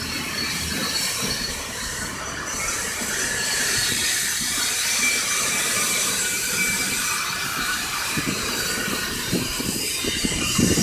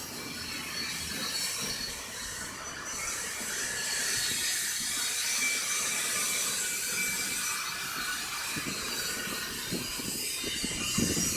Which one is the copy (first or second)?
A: first